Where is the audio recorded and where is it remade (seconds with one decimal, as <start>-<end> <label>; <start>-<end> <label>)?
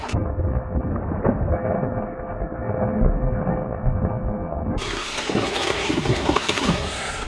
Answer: 0.0-0.9 remade; 0.9-1.5 recorded; 1.5-7.3 remade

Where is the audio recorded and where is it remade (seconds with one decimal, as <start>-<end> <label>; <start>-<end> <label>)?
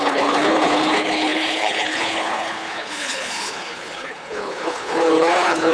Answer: 0.0-5.7 remade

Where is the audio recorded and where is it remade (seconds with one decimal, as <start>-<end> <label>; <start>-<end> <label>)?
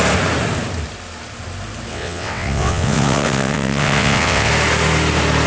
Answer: 0.0-1.9 recorded; 1.9-4.5 remade; 4.5-5.5 recorded